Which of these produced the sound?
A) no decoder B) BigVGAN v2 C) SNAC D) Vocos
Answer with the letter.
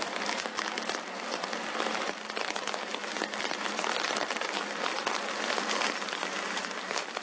A